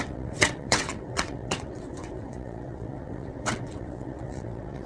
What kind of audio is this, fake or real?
fake